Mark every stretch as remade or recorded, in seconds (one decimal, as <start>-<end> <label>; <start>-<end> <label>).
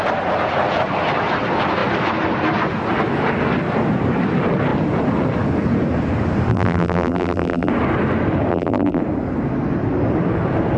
0.0-6.5 recorded; 6.5-7.7 remade; 7.7-8.5 recorded; 8.5-9.0 remade; 9.0-10.8 recorded